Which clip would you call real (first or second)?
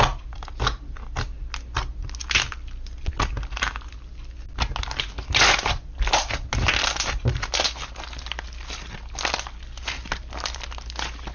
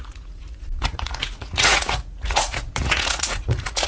first